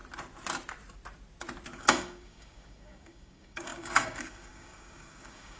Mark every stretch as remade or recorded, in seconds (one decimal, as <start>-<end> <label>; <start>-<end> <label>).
0.0-1.8 recorded; 1.8-5.6 remade